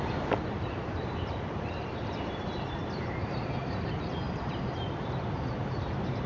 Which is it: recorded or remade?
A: remade